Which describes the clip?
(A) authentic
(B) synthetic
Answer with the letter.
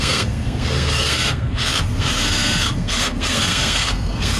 B